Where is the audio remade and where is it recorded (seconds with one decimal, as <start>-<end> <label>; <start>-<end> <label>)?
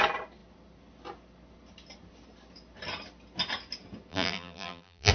0.0-4.1 recorded; 4.1-5.1 remade